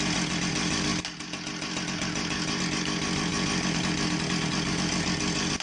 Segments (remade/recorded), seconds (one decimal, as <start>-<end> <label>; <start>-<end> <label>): 0.0-5.6 recorded